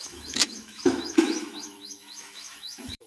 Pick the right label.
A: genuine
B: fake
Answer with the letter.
B